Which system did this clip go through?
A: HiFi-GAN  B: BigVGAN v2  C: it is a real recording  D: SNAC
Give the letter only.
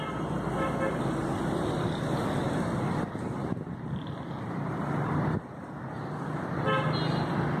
C